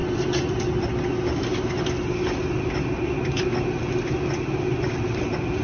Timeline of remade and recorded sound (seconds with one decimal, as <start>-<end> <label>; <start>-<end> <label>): 0.0-5.6 recorded